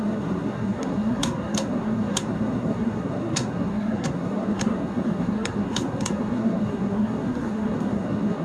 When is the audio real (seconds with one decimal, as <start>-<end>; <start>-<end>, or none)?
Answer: none